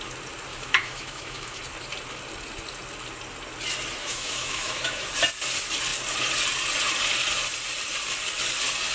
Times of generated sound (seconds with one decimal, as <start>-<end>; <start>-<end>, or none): 0.5-1.6; 4.0-5.1